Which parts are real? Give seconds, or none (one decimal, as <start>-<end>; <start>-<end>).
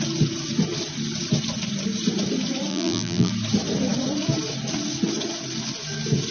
0.0-2.7; 3.3-6.3